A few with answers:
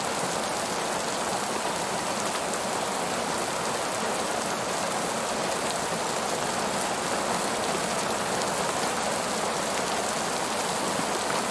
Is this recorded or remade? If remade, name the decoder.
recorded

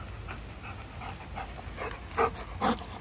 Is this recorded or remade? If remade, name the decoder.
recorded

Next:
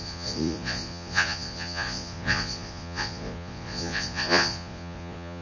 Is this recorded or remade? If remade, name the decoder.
remade, vocoder, Vocos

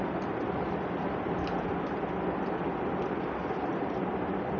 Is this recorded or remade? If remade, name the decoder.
recorded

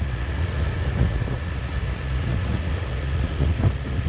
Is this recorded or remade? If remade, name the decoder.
remade, vocoder, Vocos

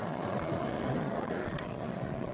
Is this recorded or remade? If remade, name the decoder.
remade, vocoder, Vocos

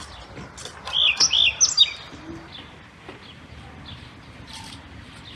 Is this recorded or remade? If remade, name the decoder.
recorded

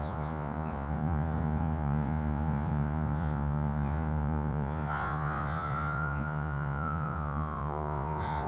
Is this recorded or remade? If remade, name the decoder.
remade, vocoder, Vocos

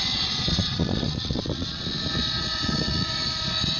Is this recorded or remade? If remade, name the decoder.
remade, vocoder, Vocos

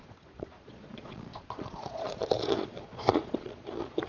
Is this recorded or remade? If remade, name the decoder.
remade, vocoder, Vocos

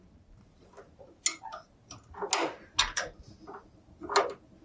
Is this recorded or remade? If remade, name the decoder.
recorded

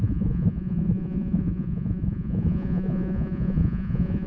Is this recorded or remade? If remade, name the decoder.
remade, vocoder, Vocos